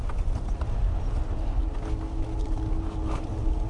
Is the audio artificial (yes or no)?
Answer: no